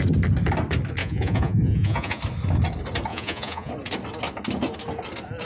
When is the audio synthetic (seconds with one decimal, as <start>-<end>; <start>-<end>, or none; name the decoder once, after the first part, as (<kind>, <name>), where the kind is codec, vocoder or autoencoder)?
1.0-2.2 (vocoder, Vocos); 3.1-3.7